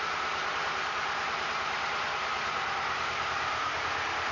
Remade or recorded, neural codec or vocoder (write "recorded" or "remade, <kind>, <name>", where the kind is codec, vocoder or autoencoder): remade, vocoder, BigVGAN v2